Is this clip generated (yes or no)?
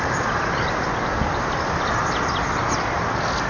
no